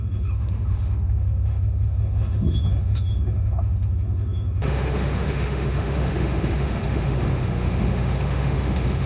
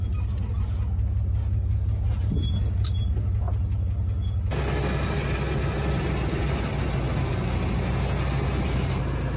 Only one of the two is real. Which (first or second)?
second